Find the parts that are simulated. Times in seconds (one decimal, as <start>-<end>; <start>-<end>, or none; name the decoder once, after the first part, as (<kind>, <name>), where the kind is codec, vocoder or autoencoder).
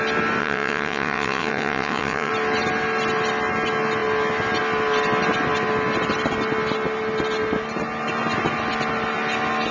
0.4-2.3 (vocoder, WaveNeXt)